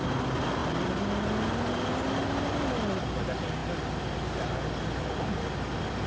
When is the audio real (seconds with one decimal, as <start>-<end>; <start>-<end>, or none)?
0.0-6.1